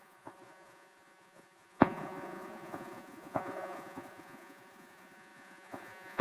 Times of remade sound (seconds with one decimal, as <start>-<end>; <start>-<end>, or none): 0.0-6.2